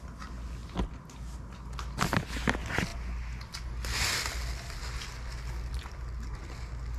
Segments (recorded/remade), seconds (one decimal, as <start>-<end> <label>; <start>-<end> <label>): 0.0-7.0 recorded